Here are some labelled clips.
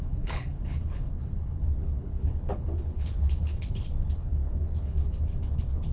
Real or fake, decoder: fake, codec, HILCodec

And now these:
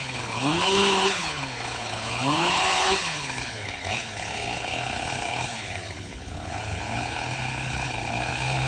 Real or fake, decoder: fake, codec, HILCodec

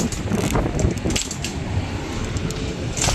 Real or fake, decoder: real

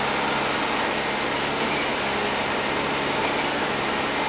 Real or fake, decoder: real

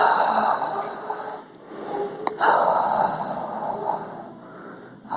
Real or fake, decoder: real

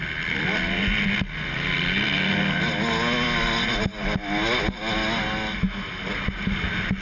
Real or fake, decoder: real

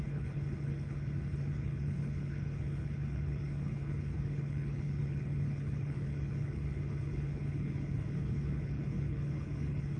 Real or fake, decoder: fake, codec, HILCodec